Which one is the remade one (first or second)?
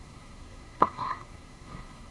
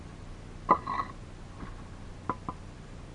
first